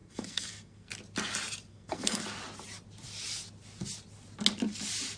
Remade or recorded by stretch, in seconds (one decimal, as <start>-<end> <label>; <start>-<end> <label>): 0.0-0.9 remade; 0.9-1.7 recorded; 1.7-2.2 remade; 2.2-5.2 recorded

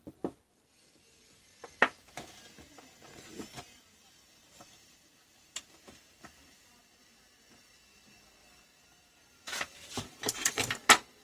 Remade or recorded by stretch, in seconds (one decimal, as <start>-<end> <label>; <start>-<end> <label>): 0.0-3.3 recorded; 3.3-6.8 remade; 6.8-9.5 recorded; 9.5-10.6 remade; 10.6-11.2 recorded